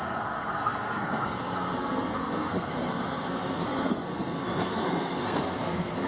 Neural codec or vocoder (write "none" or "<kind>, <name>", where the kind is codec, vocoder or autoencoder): codec, SNAC